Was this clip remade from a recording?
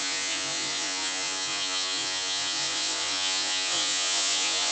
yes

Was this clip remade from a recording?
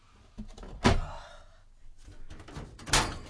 no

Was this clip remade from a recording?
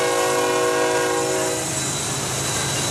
no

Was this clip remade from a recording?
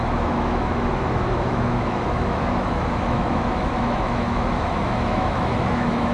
yes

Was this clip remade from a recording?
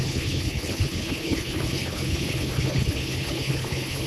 yes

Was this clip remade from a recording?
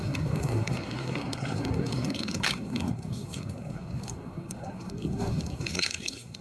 yes